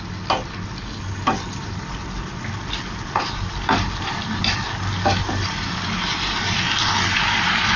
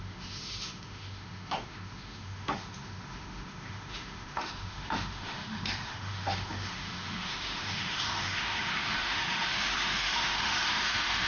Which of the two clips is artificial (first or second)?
second